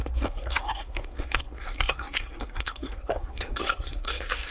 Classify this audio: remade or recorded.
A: remade